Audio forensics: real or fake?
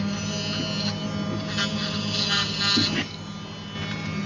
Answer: real